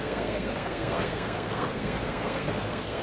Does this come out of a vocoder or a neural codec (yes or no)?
yes